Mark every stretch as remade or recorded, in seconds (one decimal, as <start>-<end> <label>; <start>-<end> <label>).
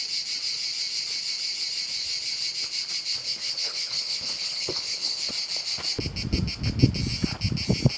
0.0-3.2 recorded; 3.2-5.3 remade; 5.3-8.0 recorded